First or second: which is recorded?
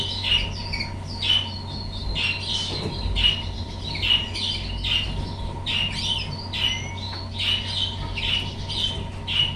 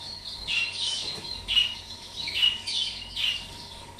first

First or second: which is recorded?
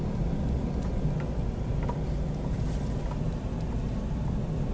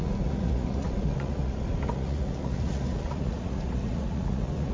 first